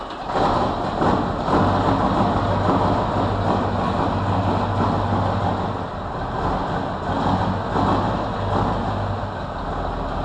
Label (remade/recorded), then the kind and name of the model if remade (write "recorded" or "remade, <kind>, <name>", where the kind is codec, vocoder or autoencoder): recorded